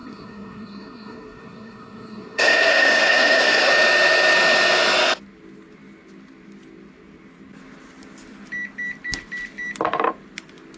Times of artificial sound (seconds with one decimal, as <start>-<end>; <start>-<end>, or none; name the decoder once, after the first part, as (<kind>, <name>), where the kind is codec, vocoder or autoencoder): 0.0-3.7 (codec, SNAC)